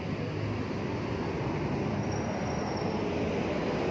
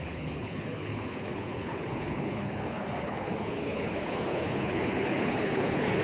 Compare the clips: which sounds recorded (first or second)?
first